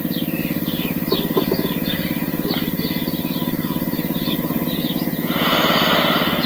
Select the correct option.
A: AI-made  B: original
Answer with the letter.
B